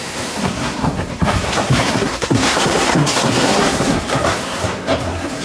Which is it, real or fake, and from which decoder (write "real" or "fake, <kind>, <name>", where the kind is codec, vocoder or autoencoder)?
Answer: fake, codec, SNAC